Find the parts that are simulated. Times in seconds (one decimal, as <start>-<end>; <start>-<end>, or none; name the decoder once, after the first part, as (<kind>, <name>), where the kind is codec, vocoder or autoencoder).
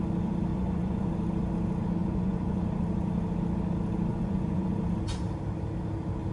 0.5-1.1 (vocoder, Vocos); 2.0-2.6; 4.1-4.8